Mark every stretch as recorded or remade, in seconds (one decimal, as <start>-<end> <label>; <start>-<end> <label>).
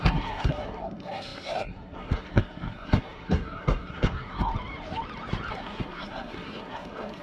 0.0-4.5 remade; 4.5-5.5 recorded; 5.5-7.2 remade